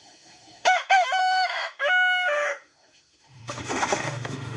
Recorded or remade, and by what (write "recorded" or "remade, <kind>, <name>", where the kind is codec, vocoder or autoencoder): remade, autoencoder, DAC-VAE